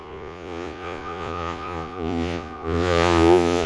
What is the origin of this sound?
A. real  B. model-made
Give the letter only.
B